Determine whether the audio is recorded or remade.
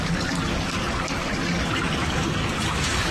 remade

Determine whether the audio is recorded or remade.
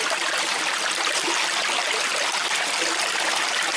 recorded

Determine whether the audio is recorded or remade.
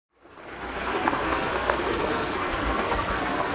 remade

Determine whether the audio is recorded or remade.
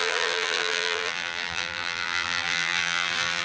remade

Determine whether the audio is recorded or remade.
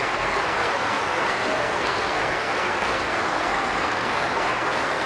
remade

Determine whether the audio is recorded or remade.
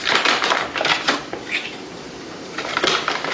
remade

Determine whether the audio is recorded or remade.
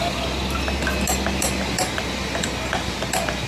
recorded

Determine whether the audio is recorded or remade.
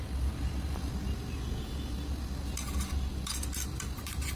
recorded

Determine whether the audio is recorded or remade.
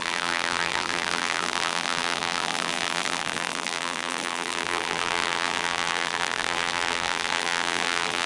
remade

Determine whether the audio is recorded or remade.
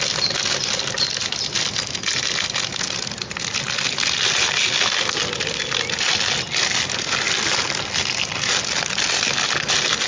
recorded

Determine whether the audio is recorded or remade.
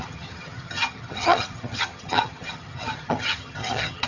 remade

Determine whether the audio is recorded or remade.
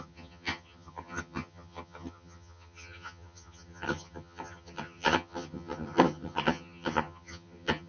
remade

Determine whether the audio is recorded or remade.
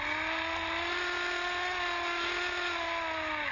recorded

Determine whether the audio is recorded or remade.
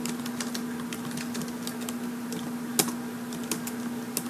recorded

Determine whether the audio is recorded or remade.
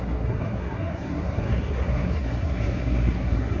remade